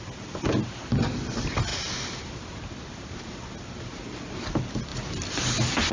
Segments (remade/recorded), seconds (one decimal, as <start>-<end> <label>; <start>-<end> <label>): 0.0-5.9 recorded

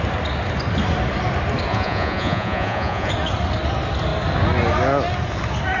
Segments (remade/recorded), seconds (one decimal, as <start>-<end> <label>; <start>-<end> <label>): 0.0-1.7 recorded; 1.7-3.1 remade; 3.1-5.8 recorded